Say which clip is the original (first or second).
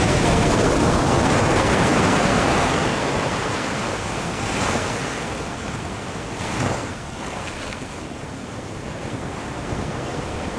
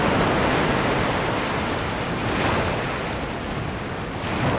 second